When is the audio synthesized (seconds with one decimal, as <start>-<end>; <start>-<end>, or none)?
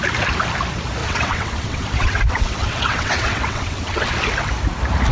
1.0-4.1